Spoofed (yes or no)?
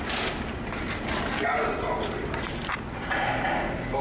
no